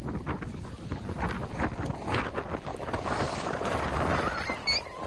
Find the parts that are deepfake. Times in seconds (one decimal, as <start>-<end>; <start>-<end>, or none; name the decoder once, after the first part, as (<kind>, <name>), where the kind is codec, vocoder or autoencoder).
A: 2.7-3.8 (vocoder, BigVGAN v2)

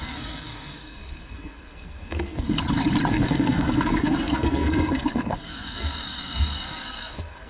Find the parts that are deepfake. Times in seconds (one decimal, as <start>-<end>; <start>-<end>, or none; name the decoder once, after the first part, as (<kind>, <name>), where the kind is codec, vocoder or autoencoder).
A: 0.0-2.6 (codec, SNAC); 3.1-7.5